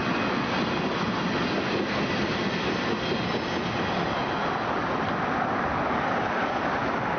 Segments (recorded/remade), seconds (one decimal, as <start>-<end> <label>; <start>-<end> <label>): 0.0-7.2 recorded